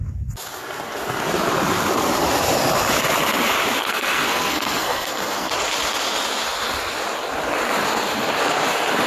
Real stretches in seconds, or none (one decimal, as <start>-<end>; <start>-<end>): 0.0-3.8; 5.5-9.1